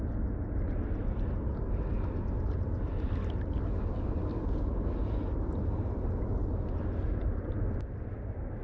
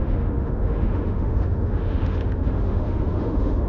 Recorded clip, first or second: first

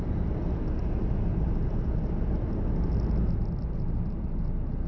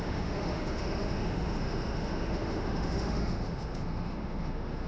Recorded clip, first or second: first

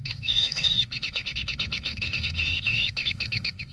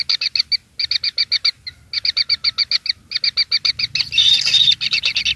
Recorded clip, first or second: second